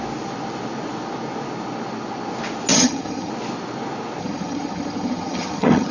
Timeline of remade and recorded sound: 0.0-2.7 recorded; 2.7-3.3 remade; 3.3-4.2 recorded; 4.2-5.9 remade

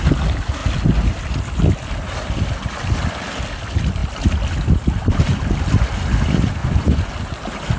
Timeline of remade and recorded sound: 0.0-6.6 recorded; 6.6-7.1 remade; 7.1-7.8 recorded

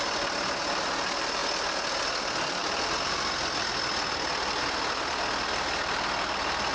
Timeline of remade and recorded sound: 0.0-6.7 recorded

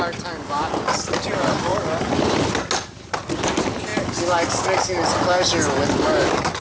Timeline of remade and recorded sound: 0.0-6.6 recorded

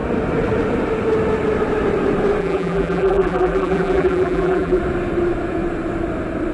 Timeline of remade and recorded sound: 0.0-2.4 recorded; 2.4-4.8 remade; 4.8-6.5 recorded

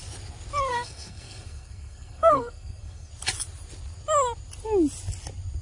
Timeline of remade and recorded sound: 0.0-0.7 recorded; 0.7-3.1 remade; 3.1-5.6 recorded